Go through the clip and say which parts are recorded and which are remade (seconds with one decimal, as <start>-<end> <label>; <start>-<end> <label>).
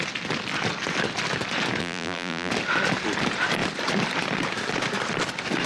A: 0.0-1.8 recorded; 1.8-2.5 remade; 2.5-5.7 recorded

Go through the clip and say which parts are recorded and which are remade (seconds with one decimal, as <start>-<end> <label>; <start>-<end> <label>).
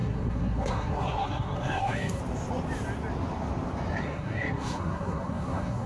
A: 0.0-2.2 remade; 2.2-3.9 recorded; 3.9-5.9 remade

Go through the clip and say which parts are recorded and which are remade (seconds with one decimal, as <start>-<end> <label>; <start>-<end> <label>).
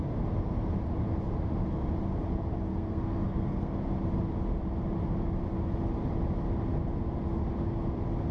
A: 0.0-2.7 recorded; 2.7-3.7 remade; 3.7-8.3 recorded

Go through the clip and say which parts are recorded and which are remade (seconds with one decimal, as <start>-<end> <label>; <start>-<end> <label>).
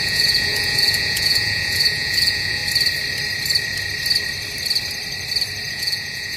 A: 0.0-2.6 remade; 2.6-5.7 recorded; 5.7-6.4 remade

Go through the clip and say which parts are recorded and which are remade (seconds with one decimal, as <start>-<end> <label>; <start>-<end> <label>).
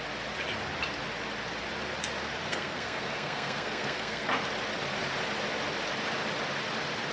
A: 0.0-2.5 recorded; 2.5-4.3 remade; 4.3-7.1 recorded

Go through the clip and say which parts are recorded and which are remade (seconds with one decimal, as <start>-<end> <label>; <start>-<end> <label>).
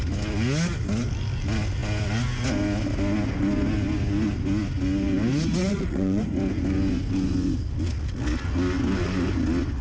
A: 0.0-5.6 recorded; 5.6-6.2 remade; 6.2-9.8 recorded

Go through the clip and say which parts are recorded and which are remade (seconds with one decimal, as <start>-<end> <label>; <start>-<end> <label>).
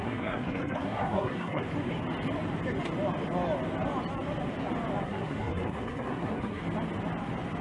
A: 0.0-1.6 remade; 1.6-5.0 recorded; 5.0-6.6 remade; 6.6-7.6 recorded